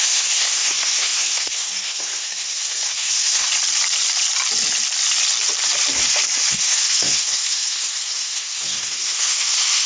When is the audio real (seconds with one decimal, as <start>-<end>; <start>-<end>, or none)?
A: 3.5-6.5